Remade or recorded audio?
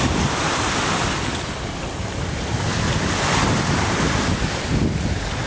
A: recorded